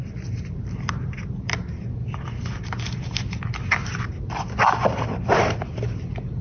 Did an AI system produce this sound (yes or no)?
no